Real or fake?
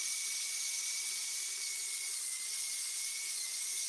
fake